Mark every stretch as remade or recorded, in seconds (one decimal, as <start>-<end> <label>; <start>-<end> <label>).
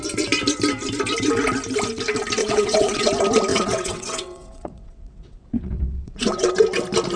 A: 0.0-2.4 recorded; 2.4-3.1 remade; 3.1-3.5 recorded; 3.5-6.5 remade; 6.5-7.2 recorded